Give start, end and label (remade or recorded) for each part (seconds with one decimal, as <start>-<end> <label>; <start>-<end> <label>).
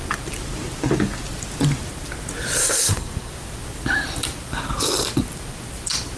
0.0-2.6 recorded; 2.6-3.3 remade; 3.3-6.2 recorded